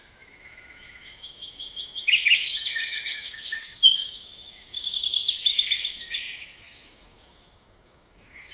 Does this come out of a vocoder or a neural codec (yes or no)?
yes